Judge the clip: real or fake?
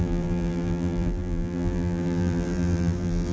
fake